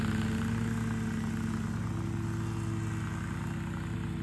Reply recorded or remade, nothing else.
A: recorded